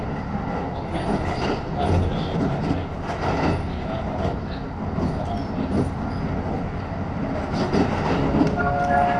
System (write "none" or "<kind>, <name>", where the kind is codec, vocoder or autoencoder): none